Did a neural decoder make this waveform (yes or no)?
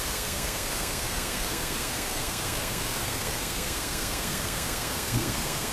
yes